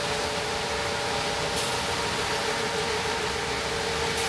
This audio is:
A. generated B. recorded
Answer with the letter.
B